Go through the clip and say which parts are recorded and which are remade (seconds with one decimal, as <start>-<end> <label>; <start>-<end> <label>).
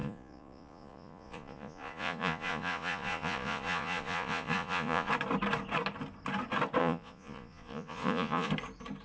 0.0-5.1 remade; 5.1-6.8 recorded; 6.8-8.5 remade; 8.5-9.0 recorded